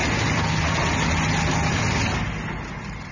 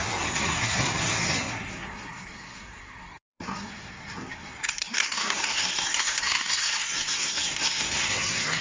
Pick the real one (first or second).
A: first